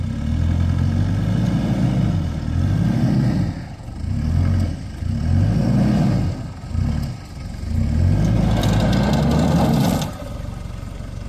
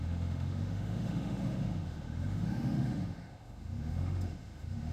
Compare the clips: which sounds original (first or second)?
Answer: first